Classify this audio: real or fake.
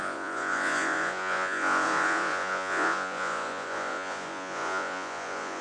fake